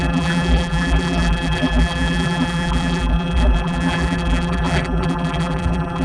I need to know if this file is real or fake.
fake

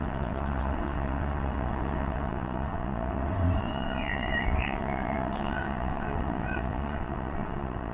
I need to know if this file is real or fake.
fake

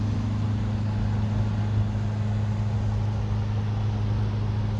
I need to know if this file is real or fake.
real